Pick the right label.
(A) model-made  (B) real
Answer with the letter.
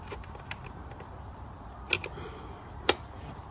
B